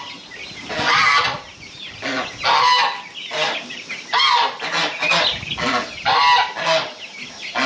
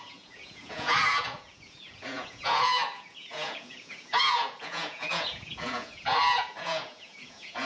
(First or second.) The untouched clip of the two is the first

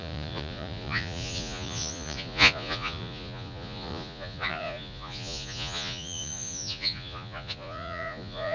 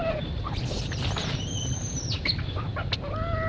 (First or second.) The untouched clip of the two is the second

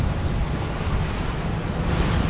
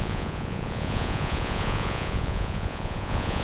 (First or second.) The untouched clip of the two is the first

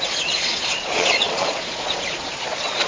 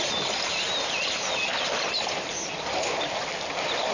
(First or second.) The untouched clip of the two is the second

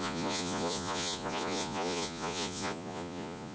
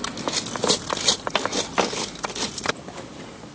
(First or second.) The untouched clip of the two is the second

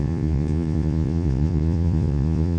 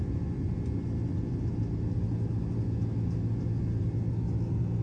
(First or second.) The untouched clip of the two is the second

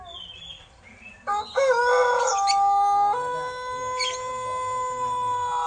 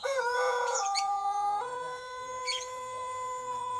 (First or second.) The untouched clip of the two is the first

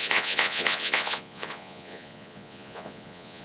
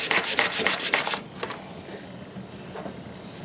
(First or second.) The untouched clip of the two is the second